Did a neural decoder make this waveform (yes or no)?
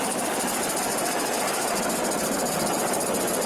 no